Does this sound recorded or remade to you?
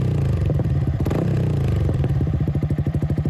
remade